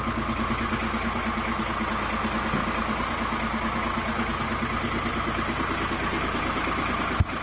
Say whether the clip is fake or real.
real